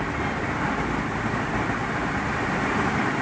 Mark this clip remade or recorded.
recorded